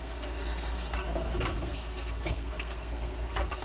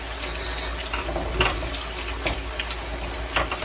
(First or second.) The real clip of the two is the second